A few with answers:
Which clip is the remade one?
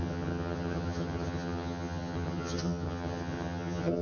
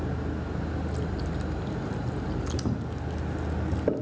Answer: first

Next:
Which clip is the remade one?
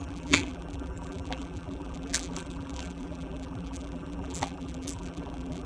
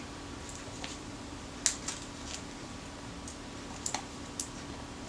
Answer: first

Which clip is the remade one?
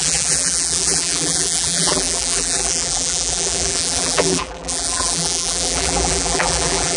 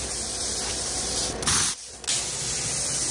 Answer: first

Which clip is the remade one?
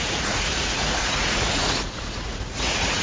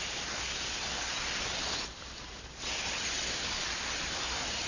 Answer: first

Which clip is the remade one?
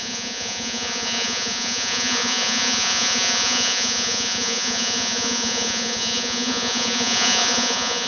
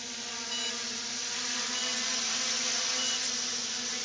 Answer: first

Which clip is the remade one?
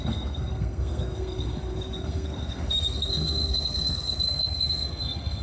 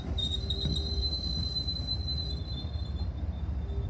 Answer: first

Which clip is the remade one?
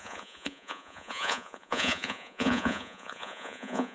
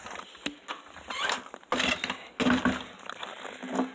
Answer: first